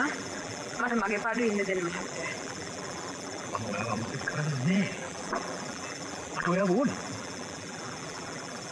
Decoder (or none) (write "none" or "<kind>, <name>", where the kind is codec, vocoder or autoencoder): vocoder, BigVGAN v2